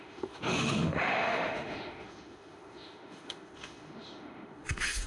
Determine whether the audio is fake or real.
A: fake